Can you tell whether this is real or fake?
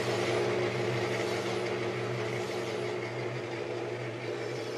real